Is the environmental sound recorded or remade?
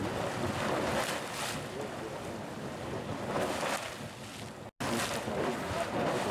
recorded